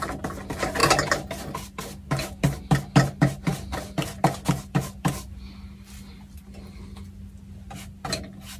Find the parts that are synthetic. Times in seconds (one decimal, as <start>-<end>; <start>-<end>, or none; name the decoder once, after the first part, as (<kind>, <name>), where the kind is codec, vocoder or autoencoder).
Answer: none